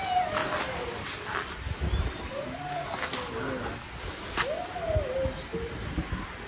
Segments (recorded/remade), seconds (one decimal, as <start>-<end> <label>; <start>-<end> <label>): 0.0-6.5 recorded